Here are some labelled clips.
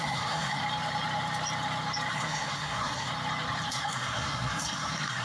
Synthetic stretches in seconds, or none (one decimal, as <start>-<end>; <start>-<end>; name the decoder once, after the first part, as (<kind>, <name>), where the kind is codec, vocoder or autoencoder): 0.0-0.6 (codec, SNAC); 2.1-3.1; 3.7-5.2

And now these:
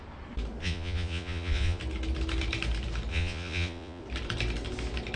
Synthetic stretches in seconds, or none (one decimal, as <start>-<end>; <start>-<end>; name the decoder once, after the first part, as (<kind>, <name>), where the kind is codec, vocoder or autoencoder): 0.6-1.8 (vocoder, Vocos); 3.1-4.0

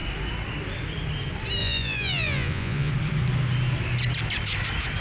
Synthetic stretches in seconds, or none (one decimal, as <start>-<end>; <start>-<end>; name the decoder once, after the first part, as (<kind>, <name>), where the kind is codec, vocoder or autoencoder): 1.6-2.9 (vocoder, Vocos)

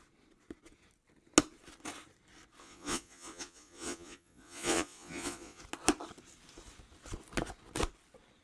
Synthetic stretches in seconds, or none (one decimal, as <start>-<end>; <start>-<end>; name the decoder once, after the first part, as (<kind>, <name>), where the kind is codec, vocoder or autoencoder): 2.6-5.6 (vocoder, Vocos)